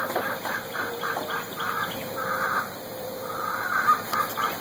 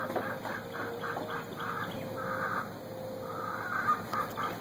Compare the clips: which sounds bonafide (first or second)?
second